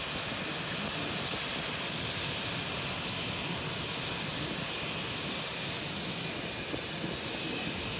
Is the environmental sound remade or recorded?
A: recorded